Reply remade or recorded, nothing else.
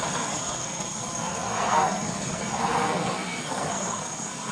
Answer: remade